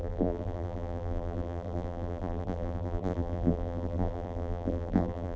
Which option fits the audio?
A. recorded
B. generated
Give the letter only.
B